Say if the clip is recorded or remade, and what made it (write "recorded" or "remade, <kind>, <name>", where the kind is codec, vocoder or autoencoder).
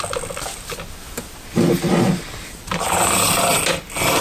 recorded